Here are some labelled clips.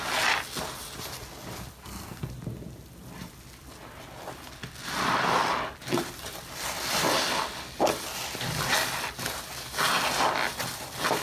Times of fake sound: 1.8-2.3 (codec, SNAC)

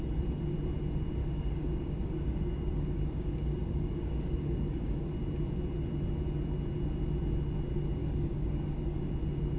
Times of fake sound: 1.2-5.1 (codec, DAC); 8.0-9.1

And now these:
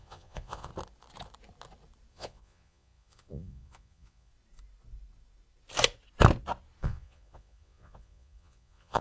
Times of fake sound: 0.0-0.7 (vocoder, Vocos); 2.1-4.3; 6.8-9.0

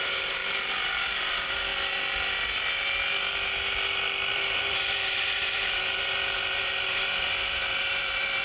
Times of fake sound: 0.0-0.4 (vocoder, BigVGAN v2); 1.0-1.7; 4.3-8.4